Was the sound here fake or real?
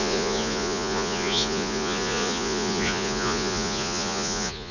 fake